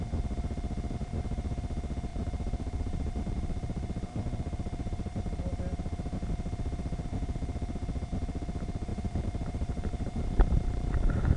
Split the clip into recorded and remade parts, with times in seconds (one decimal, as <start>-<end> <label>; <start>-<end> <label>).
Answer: 0.0-1.0 recorded; 1.0-1.6 remade; 1.6-2.1 recorded; 2.1-6.1 remade; 6.1-8.9 recorded; 8.9-11.4 remade